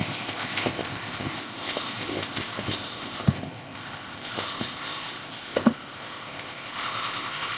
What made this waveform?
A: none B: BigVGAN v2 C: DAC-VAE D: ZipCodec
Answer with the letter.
D